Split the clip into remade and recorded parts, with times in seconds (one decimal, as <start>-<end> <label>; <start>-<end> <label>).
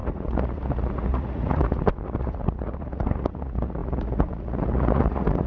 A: 0.0-5.5 remade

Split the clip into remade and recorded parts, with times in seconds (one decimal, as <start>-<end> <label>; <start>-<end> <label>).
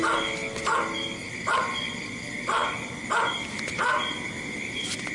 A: 0.0-5.1 recorded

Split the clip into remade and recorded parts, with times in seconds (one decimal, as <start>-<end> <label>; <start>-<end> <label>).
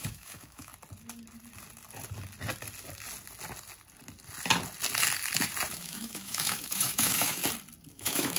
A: 0.0-0.7 remade; 0.7-5.7 recorded; 5.7-7.4 remade; 7.4-7.9 recorded; 7.9-8.4 remade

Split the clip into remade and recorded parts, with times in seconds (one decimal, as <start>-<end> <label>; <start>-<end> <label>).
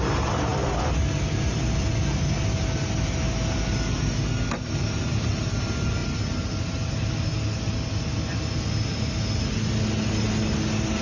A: 0.0-11.0 recorded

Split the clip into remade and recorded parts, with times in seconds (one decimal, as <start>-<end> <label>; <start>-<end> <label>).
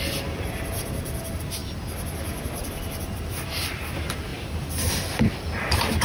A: 0.0-1.6 remade; 1.6-3.4 recorded; 3.4-4.3 remade; 4.3-4.9 recorded; 4.9-6.0 remade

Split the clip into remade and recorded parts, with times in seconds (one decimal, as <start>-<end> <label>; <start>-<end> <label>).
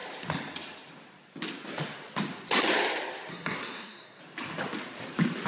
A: 0.0-3.3 recorded; 3.3-4.2 remade; 4.2-5.5 recorded